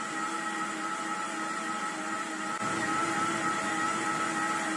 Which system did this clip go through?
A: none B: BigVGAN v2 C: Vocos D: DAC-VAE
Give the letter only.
A